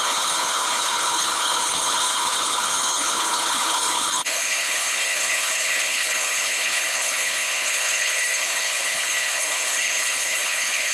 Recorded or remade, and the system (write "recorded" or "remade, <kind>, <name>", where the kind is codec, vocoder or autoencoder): remade, codec, HILCodec